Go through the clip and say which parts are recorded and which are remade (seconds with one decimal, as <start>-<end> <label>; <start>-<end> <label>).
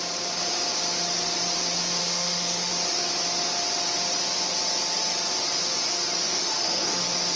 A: 0.0-2.0 recorded; 2.0-2.7 remade; 2.7-6.2 recorded; 6.2-7.0 remade; 7.0-7.4 recorded